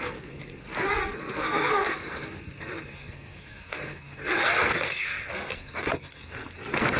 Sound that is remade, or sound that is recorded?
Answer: remade